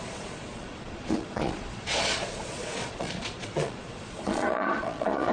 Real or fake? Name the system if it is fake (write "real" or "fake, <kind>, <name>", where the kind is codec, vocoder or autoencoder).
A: fake, vocoder, Vocos